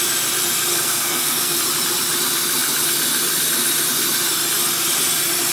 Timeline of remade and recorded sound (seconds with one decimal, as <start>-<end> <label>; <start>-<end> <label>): 0.0-0.7 recorded; 0.7-1.6 remade; 1.6-5.5 recorded